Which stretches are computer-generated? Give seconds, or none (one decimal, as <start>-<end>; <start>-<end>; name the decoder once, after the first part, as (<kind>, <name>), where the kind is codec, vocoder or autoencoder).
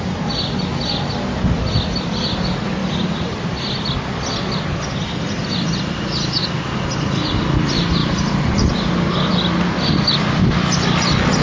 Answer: 8.0-8.7 (vocoder, BigVGAN v2)